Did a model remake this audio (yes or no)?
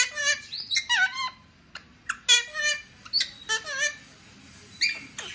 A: no